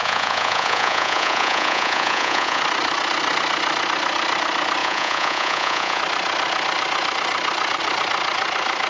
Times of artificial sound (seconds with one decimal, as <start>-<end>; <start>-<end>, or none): 0.0-2.6; 4.8-6.0